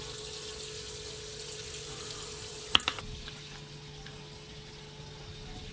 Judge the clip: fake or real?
real